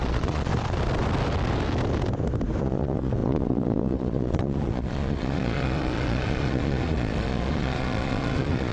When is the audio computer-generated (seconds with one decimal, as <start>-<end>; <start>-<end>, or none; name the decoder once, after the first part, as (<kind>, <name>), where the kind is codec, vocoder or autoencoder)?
0.0-0.5 (vocoder, Vocos); 2.6-8.7